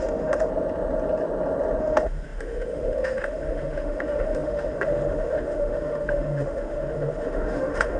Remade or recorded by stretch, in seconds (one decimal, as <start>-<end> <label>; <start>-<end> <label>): 0.0-0.5 remade; 0.5-1.8 recorded; 1.8-8.0 remade